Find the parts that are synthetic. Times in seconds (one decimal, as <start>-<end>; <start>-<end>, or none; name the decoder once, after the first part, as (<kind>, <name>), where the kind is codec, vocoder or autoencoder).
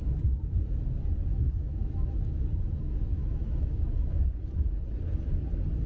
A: 1.3-2.4 (autoencoder, DAC-VAE); 3.1-4.2